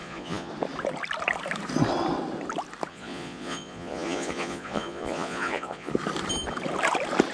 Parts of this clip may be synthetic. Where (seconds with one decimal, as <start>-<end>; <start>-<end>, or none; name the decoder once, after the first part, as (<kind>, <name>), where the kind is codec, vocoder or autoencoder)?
0.0-0.5 (vocoder, Vocos); 2.9-5.9